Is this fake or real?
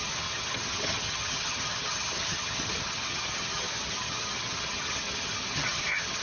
fake